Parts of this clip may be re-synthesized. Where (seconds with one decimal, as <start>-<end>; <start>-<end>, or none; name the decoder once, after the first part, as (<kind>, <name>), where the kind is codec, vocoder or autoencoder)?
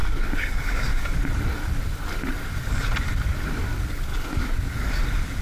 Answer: 0.0-1.2 (codec, DAC); 4.1-4.9